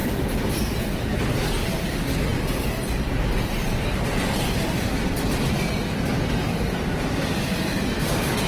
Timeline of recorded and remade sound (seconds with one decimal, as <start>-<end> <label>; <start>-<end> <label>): 0.0-8.5 recorded